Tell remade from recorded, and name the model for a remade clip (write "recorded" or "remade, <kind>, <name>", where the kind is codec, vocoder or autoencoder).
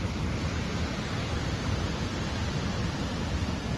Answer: recorded